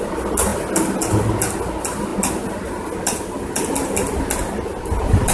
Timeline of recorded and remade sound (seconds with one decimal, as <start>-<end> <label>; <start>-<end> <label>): 0.0-5.3 recorded